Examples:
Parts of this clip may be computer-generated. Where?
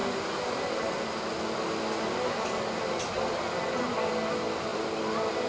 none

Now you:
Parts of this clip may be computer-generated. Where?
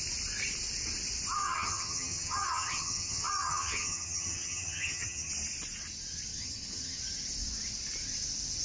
1.4-5.3 (vocoder, HiFi-GAN); 6.3-7.0